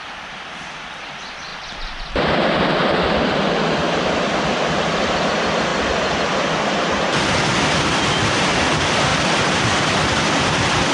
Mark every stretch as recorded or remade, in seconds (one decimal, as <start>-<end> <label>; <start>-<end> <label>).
0.0-5.7 remade; 5.7-8.2 recorded; 8.2-10.9 remade